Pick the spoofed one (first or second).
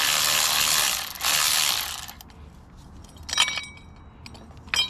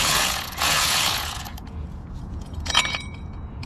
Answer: second